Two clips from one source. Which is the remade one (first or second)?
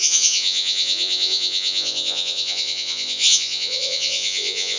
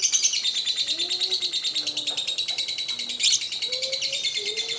first